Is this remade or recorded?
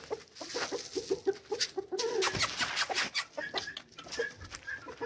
recorded